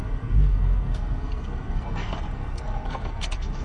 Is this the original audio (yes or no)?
no